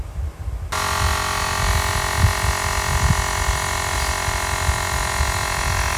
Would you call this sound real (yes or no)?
yes